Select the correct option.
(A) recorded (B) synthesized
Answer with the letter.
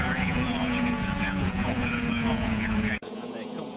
B